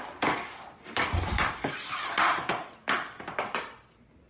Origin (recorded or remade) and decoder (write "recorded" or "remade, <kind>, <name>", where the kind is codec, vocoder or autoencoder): recorded